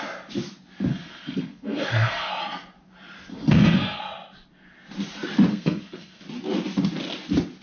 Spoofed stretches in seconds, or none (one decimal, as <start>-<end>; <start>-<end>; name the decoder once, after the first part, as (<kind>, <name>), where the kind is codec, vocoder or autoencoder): 0.9-2.3 (codec, SNAC); 3.3-4.0; 5.5-6.2